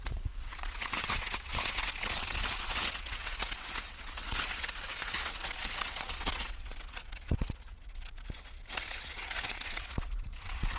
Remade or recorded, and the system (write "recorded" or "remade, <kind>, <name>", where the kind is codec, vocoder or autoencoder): remade, vocoder, WaveNeXt